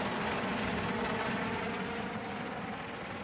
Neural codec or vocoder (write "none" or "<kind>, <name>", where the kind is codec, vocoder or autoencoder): none